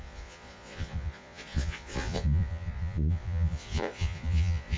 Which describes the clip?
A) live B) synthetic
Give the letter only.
B